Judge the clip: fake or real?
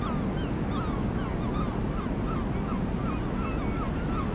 real